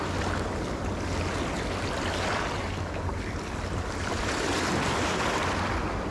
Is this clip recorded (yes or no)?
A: yes